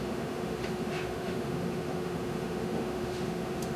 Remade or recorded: remade